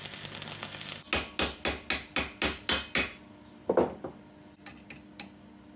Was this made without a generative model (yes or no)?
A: yes